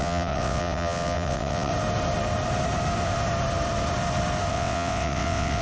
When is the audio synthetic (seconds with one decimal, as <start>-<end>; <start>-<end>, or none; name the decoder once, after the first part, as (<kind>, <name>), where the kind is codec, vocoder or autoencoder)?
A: 0.0-1.7 (vocoder, WaveNeXt); 4.5-5.6